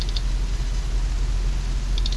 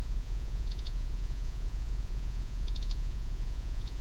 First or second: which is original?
first